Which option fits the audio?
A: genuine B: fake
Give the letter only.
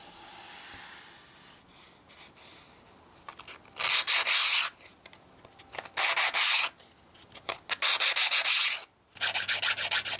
A